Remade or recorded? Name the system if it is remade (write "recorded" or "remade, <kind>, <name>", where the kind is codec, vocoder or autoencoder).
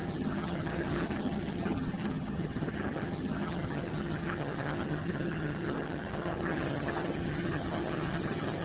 remade, vocoder, HiFi-GAN